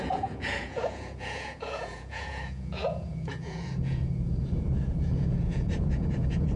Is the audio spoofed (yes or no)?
yes